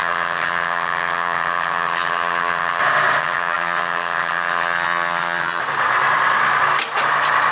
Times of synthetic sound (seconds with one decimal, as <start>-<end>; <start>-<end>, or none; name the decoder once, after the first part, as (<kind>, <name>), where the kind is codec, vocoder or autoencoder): 0.0-2.8 (vocoder, HiFi-GAN); 3.2-5.6